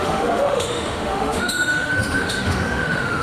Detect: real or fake fake